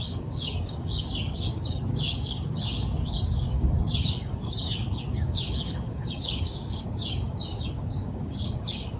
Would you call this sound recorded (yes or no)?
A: no